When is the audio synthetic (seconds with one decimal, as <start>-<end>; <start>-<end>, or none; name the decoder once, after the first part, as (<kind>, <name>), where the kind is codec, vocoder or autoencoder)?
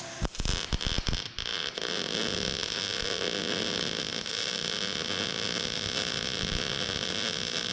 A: none